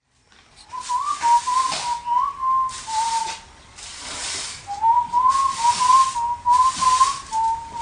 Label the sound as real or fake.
real